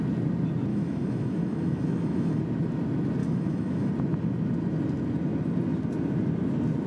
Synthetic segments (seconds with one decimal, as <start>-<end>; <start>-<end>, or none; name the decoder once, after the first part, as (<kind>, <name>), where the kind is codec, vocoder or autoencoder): 0.7-2.4 (autoencoder, DAC-VAE); 3.2-3.9